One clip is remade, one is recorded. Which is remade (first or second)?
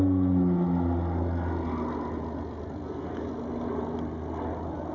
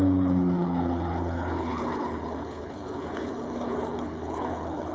second